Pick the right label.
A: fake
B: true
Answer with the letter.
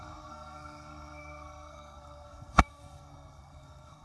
A